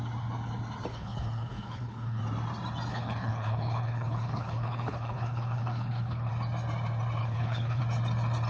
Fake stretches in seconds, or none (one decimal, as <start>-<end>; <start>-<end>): 0.9-2.2; 2.9-6.3; 7.2-7.8